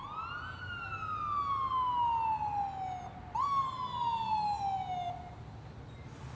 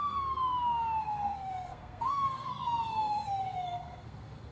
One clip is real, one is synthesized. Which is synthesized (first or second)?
second